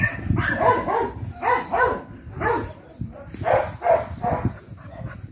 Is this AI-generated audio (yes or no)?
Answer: no